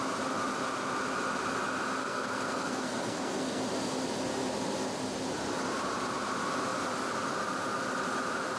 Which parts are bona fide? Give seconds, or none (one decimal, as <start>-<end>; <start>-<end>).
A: 0.0-2.0; 3.6-8.6